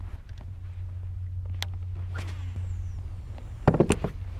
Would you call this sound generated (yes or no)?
no